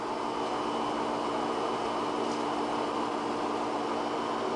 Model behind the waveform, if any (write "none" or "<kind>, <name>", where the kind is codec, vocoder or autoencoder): none